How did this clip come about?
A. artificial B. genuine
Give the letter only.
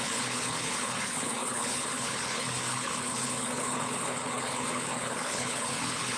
A